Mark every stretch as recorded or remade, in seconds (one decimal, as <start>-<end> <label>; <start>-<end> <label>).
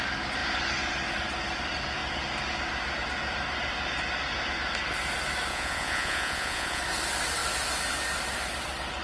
0.0-5.5 recorded; 5.5-6.8 remade; 6.8-9.0 recorded